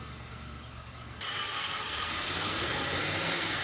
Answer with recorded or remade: remade